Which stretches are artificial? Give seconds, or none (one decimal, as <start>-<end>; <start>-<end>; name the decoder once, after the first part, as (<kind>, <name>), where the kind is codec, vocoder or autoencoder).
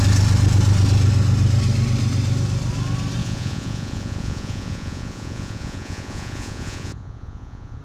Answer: 3.2-7.8 (vocoder, Vocos)